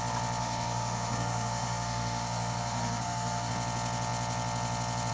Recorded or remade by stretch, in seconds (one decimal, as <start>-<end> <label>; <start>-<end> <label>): 0.0-0.4 recorded; 0.4-3.5 remade; 3.5-5.1 recorded